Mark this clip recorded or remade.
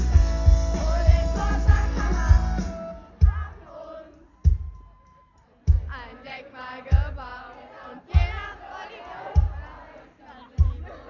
recorded